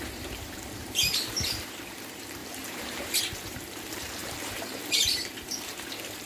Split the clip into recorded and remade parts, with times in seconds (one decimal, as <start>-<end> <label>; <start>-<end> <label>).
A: 0.0-6.3 remade